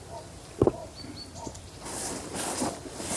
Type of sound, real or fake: real